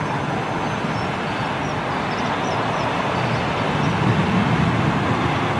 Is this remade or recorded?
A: recorded